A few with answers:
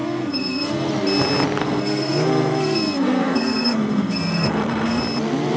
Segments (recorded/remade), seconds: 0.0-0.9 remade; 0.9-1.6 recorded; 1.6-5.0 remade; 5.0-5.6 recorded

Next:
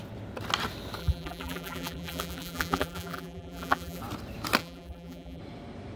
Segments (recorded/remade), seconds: 0.0-1.0 recorded; 1.0-4.0 remade; 4.0-4.6 recorded; 4.6-5.4 remade; 5.4-6.0 recorded